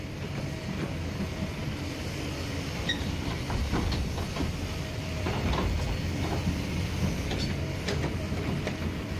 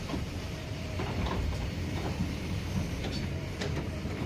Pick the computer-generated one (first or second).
second